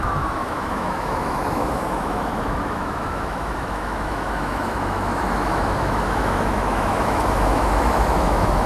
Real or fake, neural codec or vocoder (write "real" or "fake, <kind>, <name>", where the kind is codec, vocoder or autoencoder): fake, autoencoder, DAC-VAE